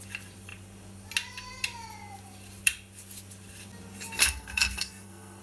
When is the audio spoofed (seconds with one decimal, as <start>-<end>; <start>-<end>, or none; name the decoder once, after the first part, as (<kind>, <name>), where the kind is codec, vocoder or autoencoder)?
4.2-5.4 (codec, SNAC)